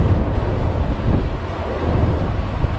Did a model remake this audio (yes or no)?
no